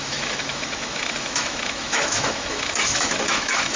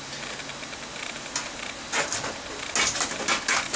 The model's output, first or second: first